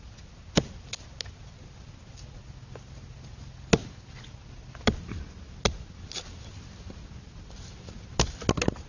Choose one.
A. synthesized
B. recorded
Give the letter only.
B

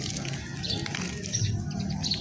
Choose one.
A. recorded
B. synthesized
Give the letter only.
A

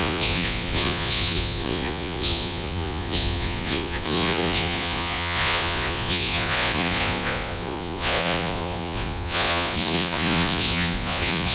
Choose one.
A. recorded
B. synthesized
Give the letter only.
B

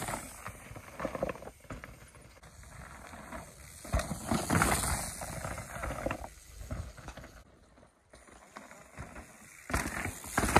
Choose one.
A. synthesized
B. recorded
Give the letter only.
B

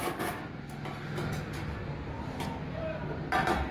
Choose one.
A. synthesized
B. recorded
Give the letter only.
B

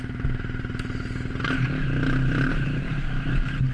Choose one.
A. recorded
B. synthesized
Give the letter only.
A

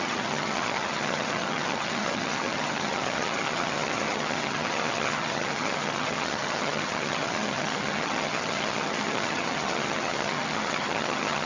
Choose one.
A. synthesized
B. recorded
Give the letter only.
A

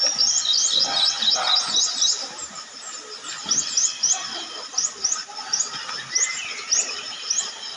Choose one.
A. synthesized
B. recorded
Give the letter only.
B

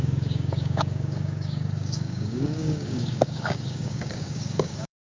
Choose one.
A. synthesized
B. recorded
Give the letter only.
A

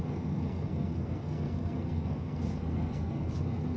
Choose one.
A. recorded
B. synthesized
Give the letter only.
B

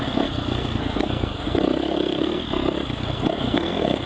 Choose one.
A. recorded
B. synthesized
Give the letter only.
B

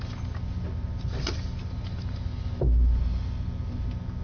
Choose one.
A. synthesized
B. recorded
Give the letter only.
B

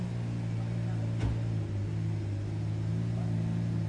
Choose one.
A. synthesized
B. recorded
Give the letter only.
B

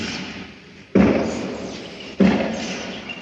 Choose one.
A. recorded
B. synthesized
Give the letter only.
A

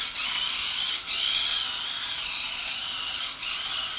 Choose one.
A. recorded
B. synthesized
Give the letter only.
A